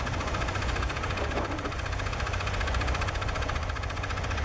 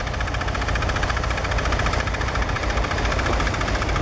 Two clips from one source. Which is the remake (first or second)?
first